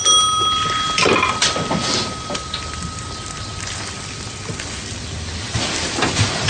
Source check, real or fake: real